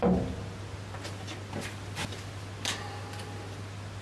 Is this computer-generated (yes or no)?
no